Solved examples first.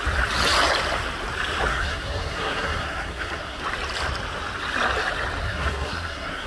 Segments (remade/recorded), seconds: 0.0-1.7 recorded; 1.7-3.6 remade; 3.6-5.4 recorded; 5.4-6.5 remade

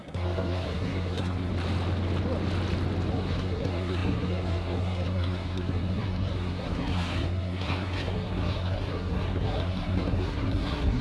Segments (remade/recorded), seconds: 0.0-1.5 remade; 1.5-3.1 recorded; 3.1-11.0 remade

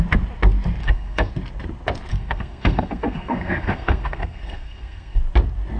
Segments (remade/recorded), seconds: 0.0-0.8 recorded; 0.8-1.3 remade; 1.3-2.1 recorded; 2.1-5.2 remade; 5.2-5.8 recorded